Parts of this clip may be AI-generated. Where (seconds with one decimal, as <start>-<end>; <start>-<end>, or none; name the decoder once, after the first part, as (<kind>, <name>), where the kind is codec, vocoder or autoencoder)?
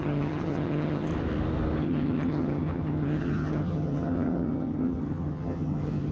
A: 0.0-1.1 (vocoder, HiFi-GAN); 1.8-6.1